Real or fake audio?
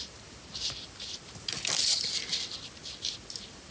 real